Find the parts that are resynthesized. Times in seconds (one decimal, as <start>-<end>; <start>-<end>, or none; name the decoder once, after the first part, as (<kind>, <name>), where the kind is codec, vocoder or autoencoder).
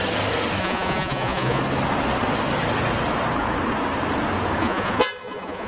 0.6-1.6 (vocoder, Vocos); 4.6-5.7